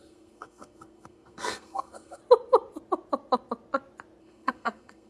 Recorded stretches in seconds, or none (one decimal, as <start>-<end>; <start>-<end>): 2.2-4.2